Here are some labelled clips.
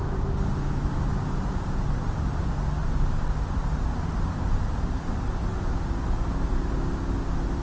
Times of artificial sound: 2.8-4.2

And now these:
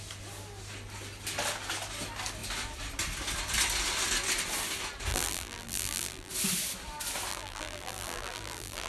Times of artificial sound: 5.1-6.3; 7.3-8.9

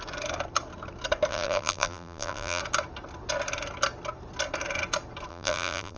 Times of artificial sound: 1.3-2.6; 5.3-6.0

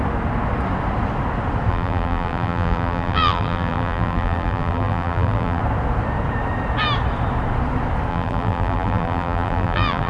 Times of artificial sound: 1.7-5.6; 8.1-10.1

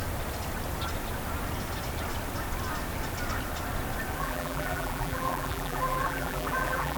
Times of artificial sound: 4.2-7.0

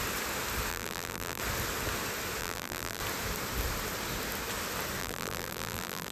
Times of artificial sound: 0.7-1.4; 2.4-3.0; 5.0-6.1